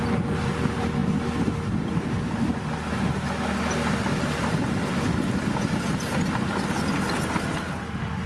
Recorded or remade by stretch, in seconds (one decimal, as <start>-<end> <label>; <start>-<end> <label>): 0.0-8.3 recorded